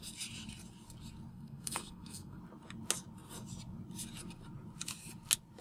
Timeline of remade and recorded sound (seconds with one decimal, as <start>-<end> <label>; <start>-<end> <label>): 0.0-1.3 recorded; 1.3-2.4 remade; 2.4-5.6 recorded